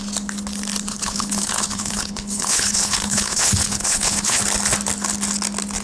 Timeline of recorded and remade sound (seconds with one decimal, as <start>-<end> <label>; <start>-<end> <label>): 0.0-0.9 recorded; 0.9-4.4 remade; 4.4-5.8 recorded